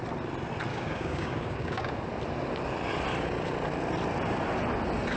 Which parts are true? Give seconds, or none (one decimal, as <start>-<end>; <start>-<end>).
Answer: 0.0-0.7; 1.9-5.2